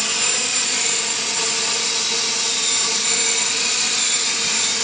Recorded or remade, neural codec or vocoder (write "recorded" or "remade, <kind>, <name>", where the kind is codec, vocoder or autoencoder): recorded